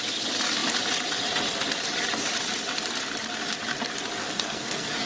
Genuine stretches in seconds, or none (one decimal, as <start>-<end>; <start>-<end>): 0.0-4.2